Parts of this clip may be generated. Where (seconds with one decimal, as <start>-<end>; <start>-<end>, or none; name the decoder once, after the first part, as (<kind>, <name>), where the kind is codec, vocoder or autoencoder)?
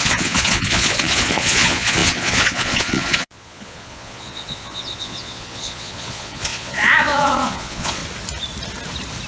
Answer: 0.0-8.0 (vocoder, Vocos)